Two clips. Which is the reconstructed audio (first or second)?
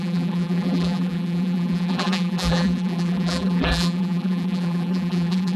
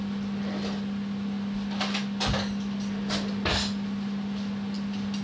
first